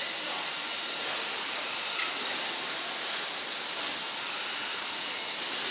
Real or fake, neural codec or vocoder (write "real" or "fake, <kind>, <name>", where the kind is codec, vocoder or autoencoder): real